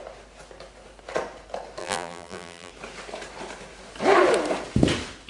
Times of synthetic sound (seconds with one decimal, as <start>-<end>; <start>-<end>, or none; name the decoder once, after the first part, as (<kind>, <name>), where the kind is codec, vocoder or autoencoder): 1.8-2.7 (vocoder, BigVGAN v2)